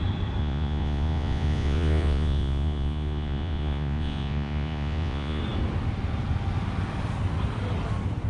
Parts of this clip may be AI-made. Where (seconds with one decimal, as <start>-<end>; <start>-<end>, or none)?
0.4-5.4